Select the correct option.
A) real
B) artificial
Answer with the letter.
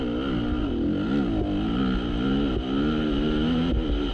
A